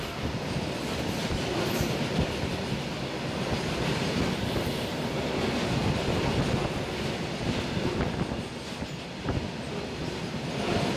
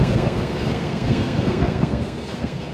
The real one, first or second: first